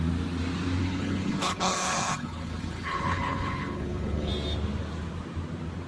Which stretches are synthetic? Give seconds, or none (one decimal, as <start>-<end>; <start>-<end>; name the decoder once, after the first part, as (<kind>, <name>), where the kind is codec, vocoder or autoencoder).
0.8-4.3 (codec, HILCodec)